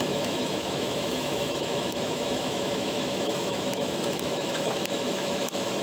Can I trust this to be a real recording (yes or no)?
no